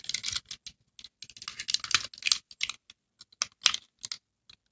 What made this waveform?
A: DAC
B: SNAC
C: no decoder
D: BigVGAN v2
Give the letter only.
C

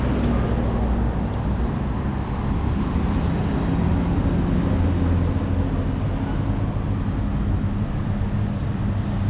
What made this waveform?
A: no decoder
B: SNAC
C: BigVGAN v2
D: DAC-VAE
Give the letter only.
A